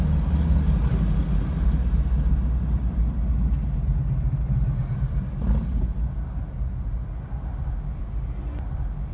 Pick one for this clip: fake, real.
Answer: real